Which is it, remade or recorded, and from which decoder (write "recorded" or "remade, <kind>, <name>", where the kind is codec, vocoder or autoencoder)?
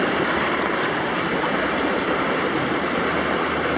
recorded